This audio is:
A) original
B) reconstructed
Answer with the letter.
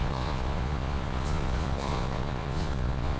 B